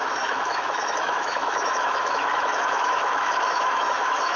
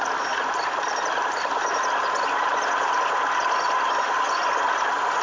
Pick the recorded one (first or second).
second